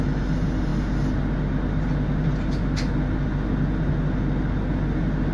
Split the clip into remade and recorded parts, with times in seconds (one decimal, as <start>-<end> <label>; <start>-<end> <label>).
0.0-5.3 recorded